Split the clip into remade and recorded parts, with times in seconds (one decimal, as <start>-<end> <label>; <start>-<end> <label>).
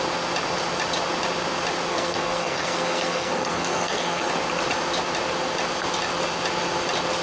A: 0.0-1.9 recorded; 1.9-4.3 remade; 4.3-7.2 recorded